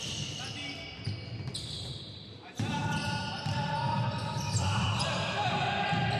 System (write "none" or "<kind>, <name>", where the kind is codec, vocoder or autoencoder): none